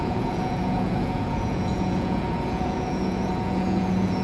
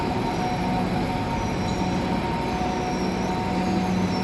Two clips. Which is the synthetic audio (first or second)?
first